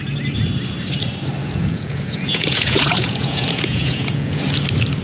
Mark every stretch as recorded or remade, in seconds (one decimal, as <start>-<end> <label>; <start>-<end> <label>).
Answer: 0.0-1.4 recorded; 1.4-4.4 remade; 4.4-5.0 recorded